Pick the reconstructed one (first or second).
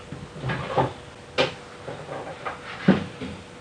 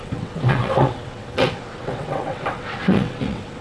second